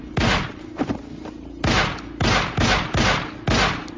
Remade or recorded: recorded